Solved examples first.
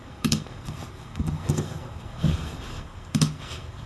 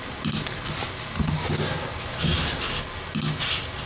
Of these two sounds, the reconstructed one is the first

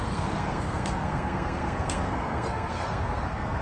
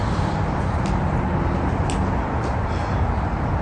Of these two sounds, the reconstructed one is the first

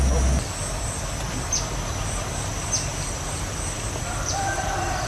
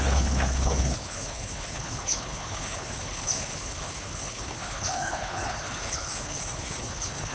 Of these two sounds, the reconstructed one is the second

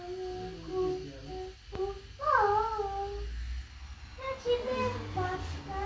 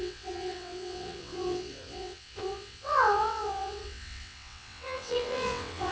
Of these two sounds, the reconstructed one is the second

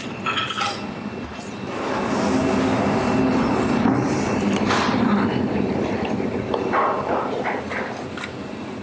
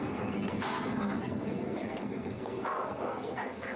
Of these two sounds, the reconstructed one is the second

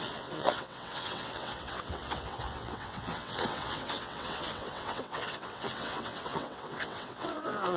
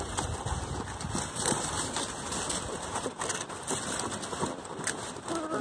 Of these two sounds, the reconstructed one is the first